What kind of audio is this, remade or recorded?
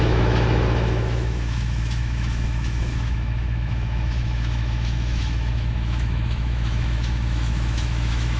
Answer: remade